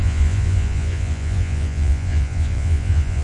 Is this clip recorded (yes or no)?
no